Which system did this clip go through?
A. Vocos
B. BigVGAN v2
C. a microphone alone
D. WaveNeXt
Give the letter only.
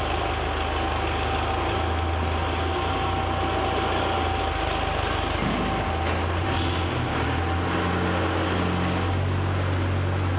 C